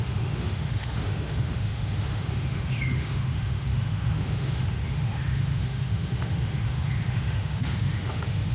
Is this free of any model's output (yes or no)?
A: no